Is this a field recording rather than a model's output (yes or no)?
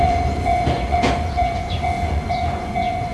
no